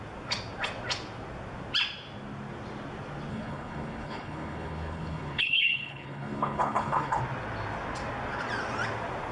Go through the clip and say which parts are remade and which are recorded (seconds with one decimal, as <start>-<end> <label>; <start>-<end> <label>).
0.0-3.3 recorded; 3.3-7.2 remade; 7.2-9.3 recorded